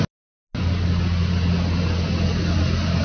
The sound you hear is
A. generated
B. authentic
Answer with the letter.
B